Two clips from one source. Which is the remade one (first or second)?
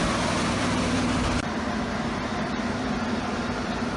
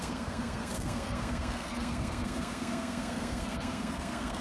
second